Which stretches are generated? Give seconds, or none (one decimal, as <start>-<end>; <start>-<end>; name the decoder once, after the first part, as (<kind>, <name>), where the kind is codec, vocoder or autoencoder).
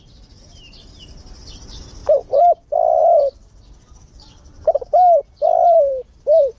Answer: 0.0-6.6 (vocoder, BigVGAN v2)